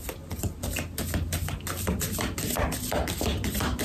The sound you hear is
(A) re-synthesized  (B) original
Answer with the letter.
B